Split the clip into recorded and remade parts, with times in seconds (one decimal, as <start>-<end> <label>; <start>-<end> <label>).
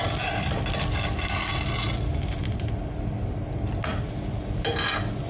0.0-5.3 recorded